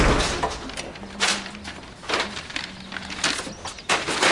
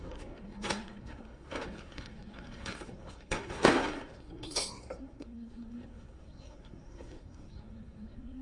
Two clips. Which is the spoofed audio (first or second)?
second